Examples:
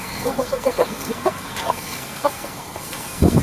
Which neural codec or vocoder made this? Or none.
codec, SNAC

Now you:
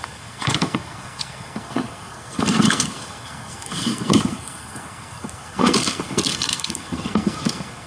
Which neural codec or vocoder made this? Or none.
codec, SNAC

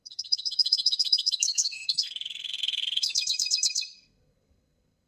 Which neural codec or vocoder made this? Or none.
codec, SNAC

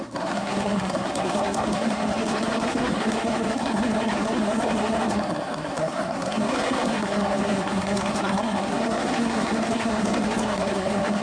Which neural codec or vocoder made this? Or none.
codec, SNAC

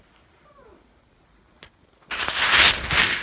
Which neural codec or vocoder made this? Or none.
none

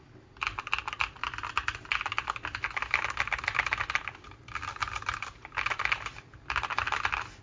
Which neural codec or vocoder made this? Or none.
none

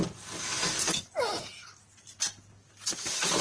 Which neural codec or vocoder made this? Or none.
none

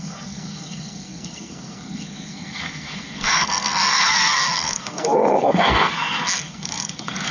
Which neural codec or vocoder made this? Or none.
codec, SNAC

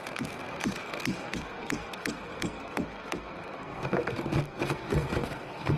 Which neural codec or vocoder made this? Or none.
codec, SNAC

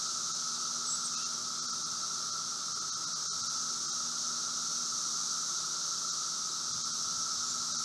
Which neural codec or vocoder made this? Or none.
none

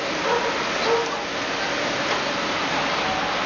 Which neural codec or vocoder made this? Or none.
none